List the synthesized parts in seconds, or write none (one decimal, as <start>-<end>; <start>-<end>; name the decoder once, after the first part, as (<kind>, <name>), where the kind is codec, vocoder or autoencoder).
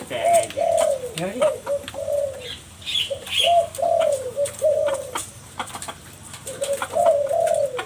2.9-7.5 (vocoder, BigVGAN v2)